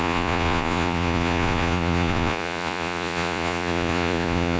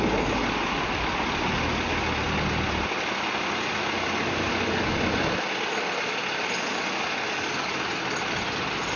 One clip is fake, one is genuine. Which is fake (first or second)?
first